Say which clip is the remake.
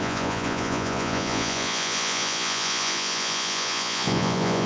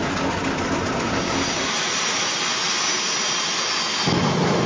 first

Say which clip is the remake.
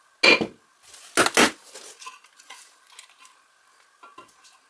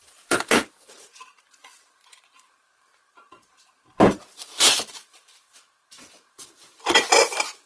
second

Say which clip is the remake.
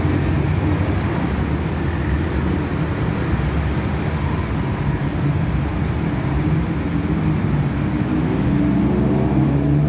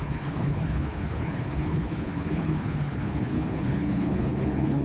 second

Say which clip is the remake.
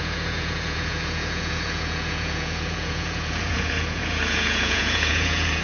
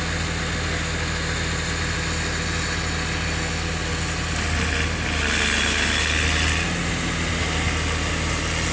first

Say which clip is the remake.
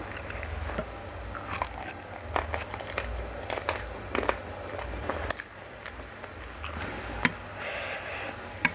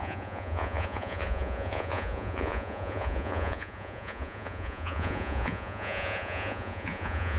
second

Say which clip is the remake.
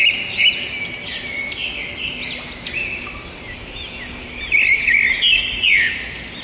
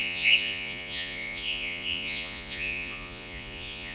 second